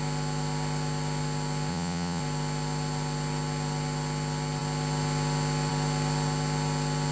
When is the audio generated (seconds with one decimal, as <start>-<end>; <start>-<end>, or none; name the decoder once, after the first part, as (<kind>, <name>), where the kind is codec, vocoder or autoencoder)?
1.7-2.2 (vocoder, Vocos)